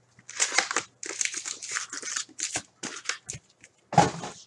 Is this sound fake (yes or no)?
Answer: no